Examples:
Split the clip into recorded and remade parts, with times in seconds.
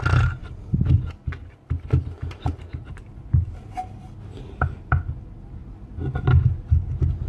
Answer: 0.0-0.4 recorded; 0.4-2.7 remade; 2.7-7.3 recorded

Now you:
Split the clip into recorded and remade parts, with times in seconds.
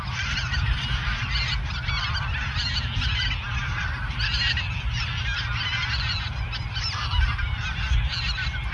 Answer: 0.0-8.7 recorded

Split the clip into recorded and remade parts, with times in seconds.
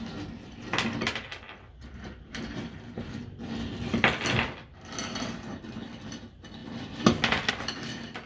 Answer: 0.0-1.7 recorded; 1.7-3.2 remade; 3.2-8.3 recorded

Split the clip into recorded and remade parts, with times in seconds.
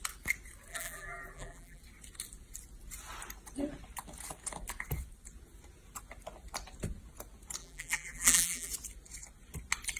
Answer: 0.0-0.7 recorded; 0.7-1.8 remade; 1.8-7.6 recorded; 7.6-8.7 remade; 8.7-10.0 recorded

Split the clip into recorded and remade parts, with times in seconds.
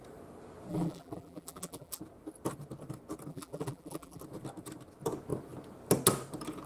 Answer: 0.0-0.7 recorded; 0.7-2.0 remade; 2.0-3.3 recorded; 3.3-4.2 remade; 4.2-6.7 recorded